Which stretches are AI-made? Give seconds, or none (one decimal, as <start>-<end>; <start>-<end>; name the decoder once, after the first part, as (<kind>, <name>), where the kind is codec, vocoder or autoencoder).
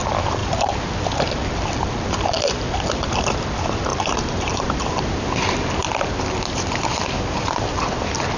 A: 0.4-0.9 (vocoder, BigVGAN v2); 3.9-4.9